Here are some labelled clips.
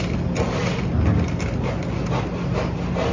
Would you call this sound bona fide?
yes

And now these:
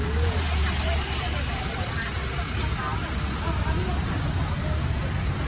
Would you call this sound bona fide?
yes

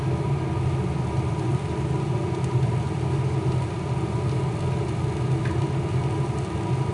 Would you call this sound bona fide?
yes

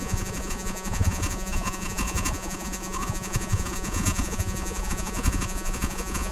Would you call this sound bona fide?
no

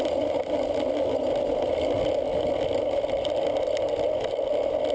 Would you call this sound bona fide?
yes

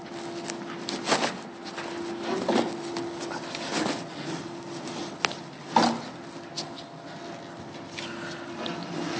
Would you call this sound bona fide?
yes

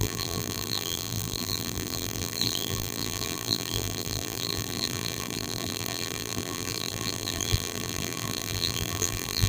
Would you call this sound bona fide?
no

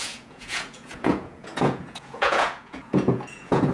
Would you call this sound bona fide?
no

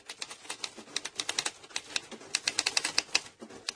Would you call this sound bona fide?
yes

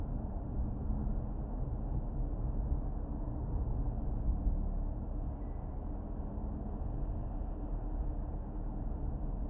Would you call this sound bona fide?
yes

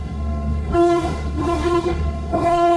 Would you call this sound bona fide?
no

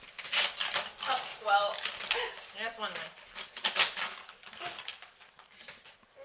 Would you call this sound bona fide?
yes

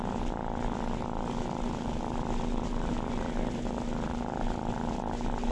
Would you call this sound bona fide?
yes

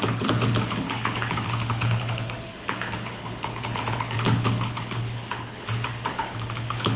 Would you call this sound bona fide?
no